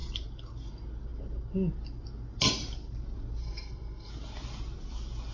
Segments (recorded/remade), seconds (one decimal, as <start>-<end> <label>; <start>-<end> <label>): 0.0-3.4 recorded; 3.4-4.1 remade; 4.1-5.3 recorded